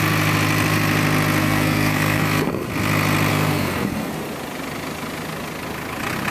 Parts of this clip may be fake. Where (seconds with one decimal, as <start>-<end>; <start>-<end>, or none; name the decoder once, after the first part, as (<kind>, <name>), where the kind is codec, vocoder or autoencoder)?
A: 1.4-2.7 (codec, SNAC); 3.3-4.1